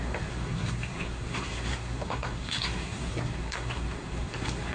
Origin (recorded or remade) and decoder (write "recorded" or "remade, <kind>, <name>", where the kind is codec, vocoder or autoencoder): remade, codec, SNAC